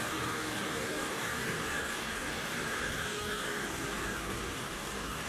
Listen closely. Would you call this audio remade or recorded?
remade